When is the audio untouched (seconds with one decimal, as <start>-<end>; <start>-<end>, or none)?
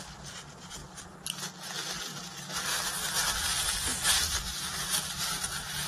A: 0.0-5.9